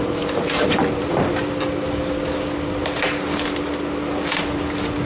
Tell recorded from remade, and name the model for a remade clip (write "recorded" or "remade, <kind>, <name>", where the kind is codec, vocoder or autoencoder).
recorded